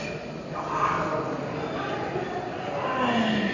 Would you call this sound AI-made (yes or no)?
no